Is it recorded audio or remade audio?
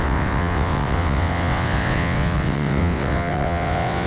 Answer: remade